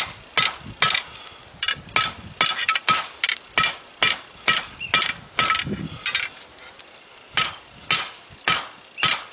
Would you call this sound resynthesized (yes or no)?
no